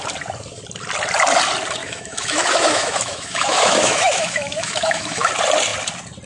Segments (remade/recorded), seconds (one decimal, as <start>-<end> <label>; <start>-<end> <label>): 0.0-1.8 recorded; 1.8-5.3 remade; 5.3-6.3 recorded